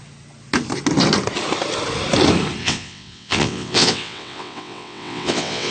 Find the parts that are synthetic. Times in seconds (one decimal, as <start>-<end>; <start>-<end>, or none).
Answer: 2.6-5.7